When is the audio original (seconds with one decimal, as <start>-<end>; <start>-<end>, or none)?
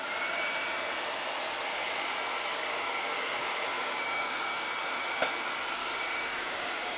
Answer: 0.0-2.5; 4.7-5.8